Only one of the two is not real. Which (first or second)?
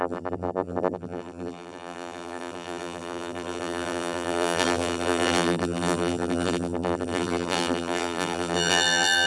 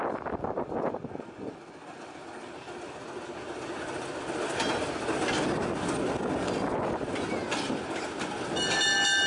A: first